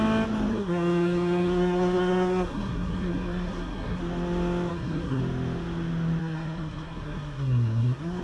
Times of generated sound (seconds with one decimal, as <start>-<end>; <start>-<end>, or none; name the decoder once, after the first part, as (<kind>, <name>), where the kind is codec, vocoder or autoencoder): 0.5-4.0 (codec, SNAC); 4.7-5.2; 6.2-8.2